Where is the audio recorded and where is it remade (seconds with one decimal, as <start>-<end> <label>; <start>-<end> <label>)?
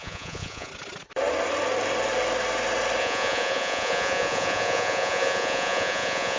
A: 0.0-0.7 remade; 0.7-3.0 recorded; 3.0-6.4 remade